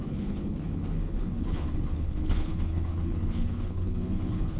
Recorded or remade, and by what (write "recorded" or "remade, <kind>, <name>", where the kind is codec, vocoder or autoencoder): remade, codec, HILCodec